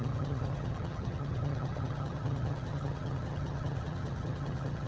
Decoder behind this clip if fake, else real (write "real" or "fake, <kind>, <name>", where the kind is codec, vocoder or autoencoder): fake, vocoder, HiFi-GAN